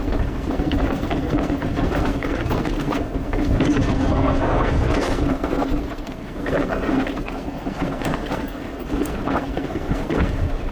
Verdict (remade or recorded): remade